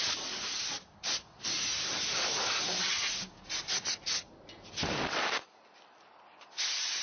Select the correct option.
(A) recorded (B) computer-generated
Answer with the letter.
B